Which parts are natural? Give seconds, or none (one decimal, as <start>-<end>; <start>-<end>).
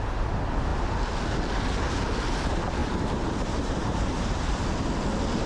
0.0-2.8; 4.6-5.5